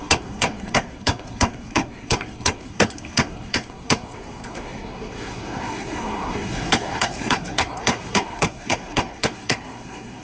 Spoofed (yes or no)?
yes